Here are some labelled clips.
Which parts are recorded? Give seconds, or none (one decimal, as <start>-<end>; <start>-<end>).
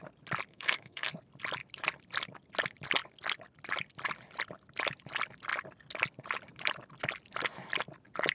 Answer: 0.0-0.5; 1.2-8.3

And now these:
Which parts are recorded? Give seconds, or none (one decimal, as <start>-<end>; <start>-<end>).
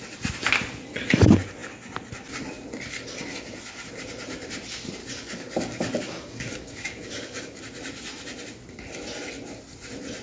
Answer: 0.0-5.0; 7.6-10.2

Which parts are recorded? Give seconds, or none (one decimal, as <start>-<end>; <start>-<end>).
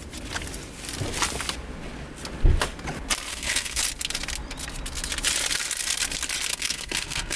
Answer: 0.0-3.3; 3.8-6.5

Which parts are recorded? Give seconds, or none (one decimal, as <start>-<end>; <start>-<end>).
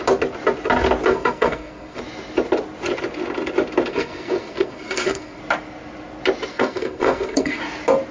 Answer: 0.0-1.1; 2.0-3.9; 5.4-6.5; 7.6-8.1